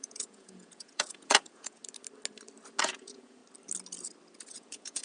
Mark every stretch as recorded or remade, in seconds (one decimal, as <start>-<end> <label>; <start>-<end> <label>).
0.0-1.8 remade; 1.8-2.8 recorded; 2.8-3.4 remade; 3.4-4.5 recorded; 4.5-5.0 remade